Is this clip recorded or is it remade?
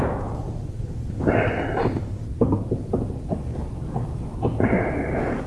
recorded